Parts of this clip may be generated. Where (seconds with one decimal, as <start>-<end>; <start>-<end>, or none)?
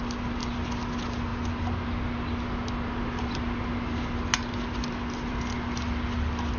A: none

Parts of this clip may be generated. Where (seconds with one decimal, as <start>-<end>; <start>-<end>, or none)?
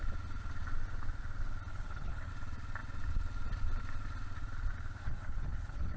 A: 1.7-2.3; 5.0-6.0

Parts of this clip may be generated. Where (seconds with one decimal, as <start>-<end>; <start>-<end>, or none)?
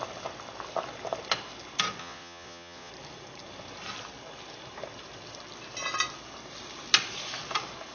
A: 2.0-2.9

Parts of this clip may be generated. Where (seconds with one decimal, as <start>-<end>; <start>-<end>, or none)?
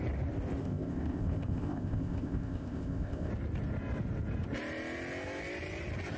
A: 0.6-3.3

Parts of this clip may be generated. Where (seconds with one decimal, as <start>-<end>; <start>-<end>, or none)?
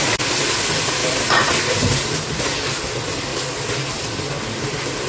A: none